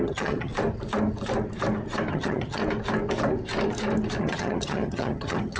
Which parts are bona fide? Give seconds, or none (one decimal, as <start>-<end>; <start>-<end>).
0.5-2.1; 2.6-4.2